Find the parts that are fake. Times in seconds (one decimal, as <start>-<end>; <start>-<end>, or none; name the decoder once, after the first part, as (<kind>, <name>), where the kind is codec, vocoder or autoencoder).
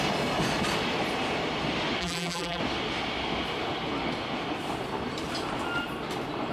2.0-2.6 (vocoder, BigVGAN v2)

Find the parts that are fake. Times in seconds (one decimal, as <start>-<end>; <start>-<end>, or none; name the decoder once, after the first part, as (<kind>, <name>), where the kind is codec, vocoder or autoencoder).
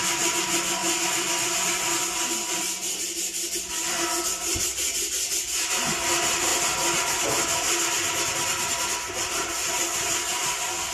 none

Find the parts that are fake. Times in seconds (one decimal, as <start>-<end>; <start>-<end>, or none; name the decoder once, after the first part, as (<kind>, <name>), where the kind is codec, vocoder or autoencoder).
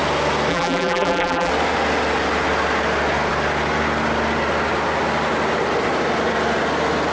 0.5-1.5 (vocoder, BigVGAN v2)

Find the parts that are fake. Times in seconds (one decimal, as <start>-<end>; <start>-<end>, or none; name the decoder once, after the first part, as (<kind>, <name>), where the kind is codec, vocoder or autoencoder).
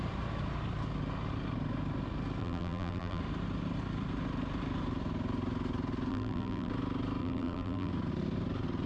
2.4-3.2 (vocoder, BigVGAN v2); 6.1-6.7; 7.2-7.9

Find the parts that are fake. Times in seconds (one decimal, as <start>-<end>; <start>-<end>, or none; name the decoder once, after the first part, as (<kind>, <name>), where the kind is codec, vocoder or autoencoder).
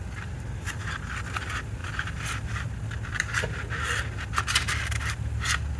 1.8-2.6 (vocoder, BigVGAN v2)